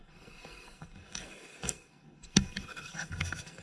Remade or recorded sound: remade